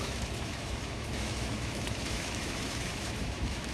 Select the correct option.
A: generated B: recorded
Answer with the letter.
A